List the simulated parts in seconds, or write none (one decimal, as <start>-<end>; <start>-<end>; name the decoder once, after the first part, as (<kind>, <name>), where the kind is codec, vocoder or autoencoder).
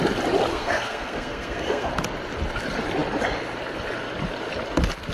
0.5-1.9 (codec, SNAC)